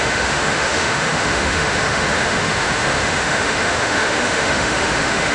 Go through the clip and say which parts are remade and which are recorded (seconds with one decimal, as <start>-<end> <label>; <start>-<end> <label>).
0.0-5.3 remade